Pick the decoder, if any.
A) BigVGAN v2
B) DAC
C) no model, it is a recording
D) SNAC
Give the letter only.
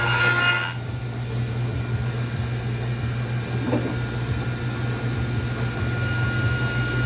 C